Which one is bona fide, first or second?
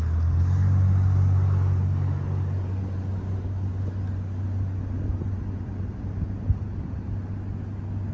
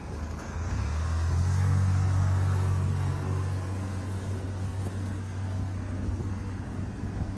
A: first